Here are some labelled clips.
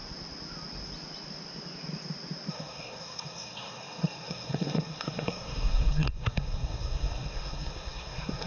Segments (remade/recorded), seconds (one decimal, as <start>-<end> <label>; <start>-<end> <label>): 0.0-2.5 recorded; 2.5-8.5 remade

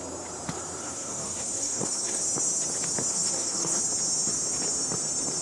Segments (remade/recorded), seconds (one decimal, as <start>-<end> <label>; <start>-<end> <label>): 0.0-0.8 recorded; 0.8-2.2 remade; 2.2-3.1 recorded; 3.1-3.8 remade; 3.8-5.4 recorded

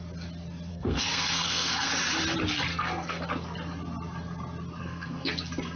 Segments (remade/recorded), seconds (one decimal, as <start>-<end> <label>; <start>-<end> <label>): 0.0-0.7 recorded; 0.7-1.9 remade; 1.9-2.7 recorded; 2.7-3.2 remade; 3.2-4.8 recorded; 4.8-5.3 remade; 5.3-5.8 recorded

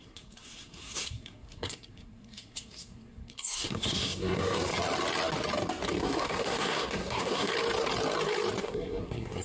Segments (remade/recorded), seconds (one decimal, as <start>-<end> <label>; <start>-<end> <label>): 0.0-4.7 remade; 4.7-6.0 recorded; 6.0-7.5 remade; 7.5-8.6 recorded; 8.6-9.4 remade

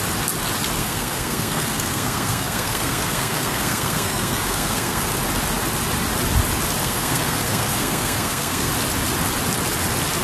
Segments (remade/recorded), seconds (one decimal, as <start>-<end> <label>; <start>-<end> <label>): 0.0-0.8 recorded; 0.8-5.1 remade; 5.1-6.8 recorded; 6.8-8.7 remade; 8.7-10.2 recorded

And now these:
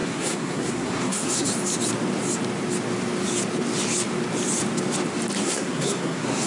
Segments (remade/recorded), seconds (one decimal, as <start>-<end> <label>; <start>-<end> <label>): 0.0-1.5 remade; 1.5-5.4 recorded; 5.4-6.5 remade